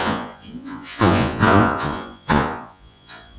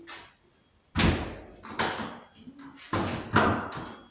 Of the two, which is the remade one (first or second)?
first